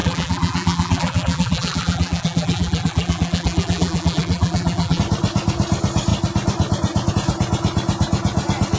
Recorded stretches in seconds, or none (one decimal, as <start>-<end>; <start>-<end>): 5.0-8.8